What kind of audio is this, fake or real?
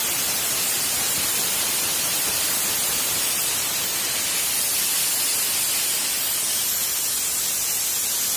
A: real